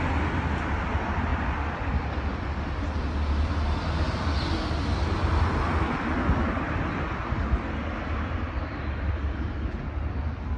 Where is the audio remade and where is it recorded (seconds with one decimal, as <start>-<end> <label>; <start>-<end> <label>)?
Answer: 0.0-10.6 recorded